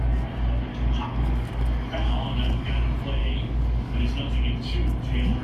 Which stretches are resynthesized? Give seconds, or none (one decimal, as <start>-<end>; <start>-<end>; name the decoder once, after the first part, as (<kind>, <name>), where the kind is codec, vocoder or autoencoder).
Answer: 0.7-2.7 (codec, DAC); 3.2-4.0